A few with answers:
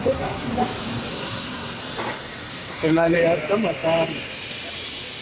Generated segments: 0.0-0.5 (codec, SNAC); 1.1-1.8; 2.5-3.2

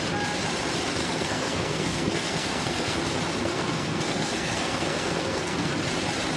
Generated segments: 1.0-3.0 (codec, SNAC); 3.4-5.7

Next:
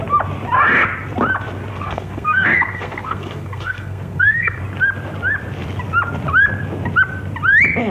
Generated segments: 1.7-4.6 (codec, SNAC)

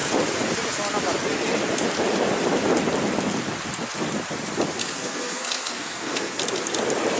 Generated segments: 4.8-6.4 (codec, SNAC)

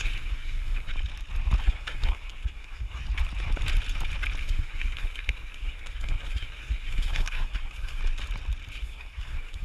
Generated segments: 0.0-0.9 (codec, SNAC); 1.6-3.0; 4.4-8.0; 8.8-9.6

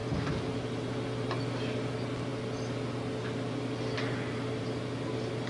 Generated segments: none